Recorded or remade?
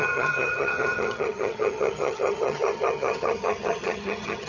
remade